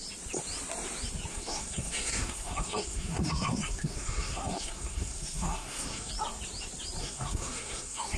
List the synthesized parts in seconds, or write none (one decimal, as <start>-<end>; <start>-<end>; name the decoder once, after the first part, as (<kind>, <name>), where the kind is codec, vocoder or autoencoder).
1.3-6.1 (codec, SNAC); 7.0-8.2